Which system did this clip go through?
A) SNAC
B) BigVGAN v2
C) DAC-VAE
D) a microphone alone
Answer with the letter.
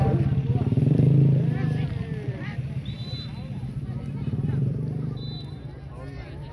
B